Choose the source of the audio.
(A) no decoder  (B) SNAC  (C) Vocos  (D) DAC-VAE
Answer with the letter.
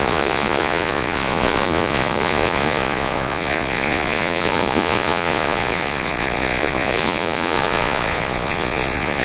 C